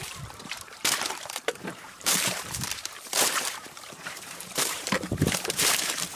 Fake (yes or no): yes